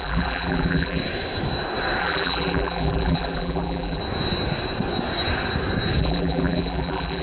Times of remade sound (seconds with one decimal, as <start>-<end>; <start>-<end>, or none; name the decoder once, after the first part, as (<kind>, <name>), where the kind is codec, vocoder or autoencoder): 0.0-1.0 (vocoder, BigVGAN v2); 2.0-4.0; 6.0-7.2